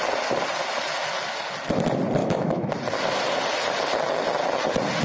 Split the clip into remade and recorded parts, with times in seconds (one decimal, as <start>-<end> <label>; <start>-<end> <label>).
0.0-2.2 recorded; 2.2-2.7 remade; 2.7-5.0 recorded